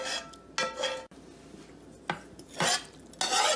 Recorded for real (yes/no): yes